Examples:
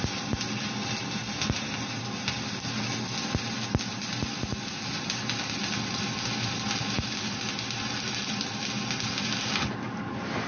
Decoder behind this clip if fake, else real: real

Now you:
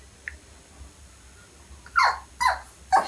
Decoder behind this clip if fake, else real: real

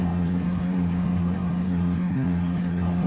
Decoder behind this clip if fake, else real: fake, codec, SNAC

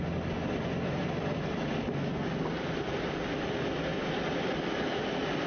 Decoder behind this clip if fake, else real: real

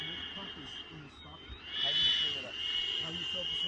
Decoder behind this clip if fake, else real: real